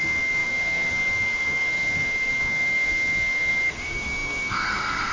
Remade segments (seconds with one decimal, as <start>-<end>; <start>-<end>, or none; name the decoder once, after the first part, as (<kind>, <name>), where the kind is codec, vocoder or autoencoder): 0.0-5.1 (codec, SNAC)